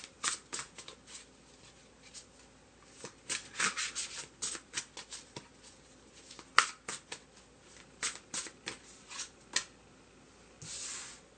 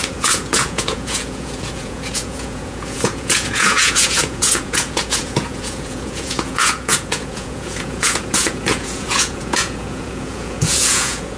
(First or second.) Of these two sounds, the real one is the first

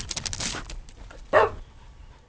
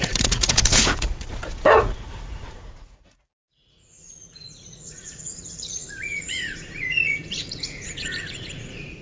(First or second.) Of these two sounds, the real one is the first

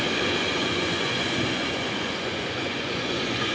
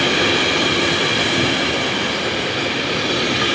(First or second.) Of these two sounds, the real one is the second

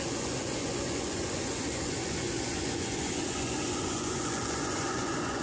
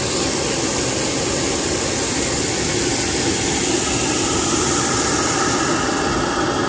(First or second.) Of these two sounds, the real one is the second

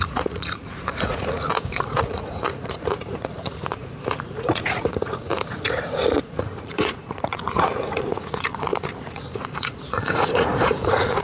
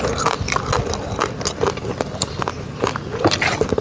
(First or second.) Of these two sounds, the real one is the second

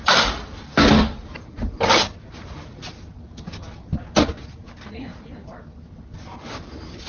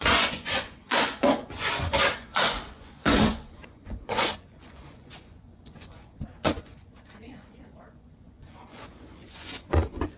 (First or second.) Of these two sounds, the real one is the first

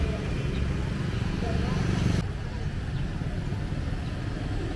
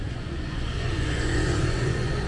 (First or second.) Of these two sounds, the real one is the first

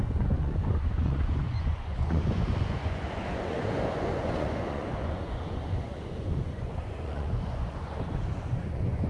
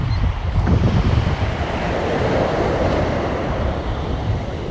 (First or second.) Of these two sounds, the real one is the second